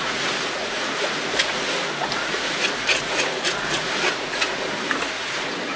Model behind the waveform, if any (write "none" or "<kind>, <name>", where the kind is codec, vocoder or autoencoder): vocoder, Vocos